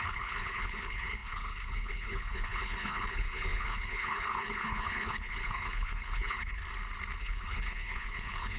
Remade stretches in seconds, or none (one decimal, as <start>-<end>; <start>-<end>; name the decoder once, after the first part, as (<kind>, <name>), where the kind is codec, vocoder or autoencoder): 0.0-6.6 (codec, HILCodec); 7.2-8.6